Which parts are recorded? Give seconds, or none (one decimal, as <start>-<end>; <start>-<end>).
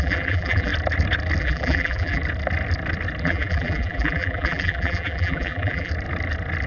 0.7-1.4; 2.2-3.2; 5.9-6.7